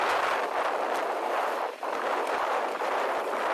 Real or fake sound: real